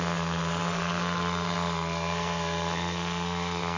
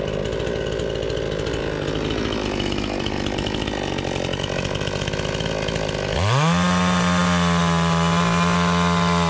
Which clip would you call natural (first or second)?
second